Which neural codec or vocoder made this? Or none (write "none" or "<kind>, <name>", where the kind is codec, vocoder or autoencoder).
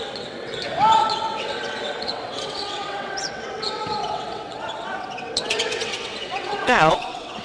vocoder, WaveNeXt